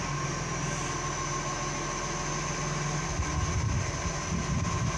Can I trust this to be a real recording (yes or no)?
yes